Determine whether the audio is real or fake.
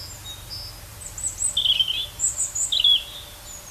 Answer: real